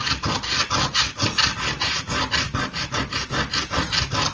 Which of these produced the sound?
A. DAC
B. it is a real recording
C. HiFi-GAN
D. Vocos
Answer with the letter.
B